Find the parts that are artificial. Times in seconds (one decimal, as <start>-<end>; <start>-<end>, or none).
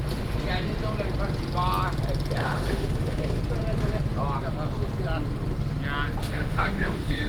2.4-3.4; 6.2-7.3